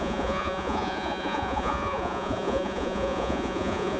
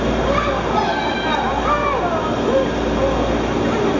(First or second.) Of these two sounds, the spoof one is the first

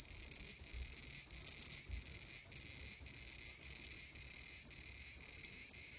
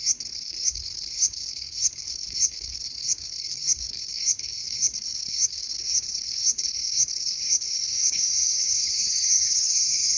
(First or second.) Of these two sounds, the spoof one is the second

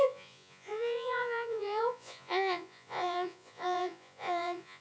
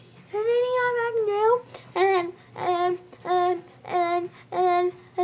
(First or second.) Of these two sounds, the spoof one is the first